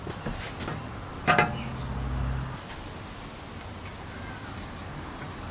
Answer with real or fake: real